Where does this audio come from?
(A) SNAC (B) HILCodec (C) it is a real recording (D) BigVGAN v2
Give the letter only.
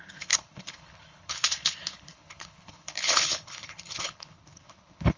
B